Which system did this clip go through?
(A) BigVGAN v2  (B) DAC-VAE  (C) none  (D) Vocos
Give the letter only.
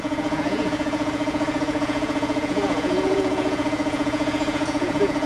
D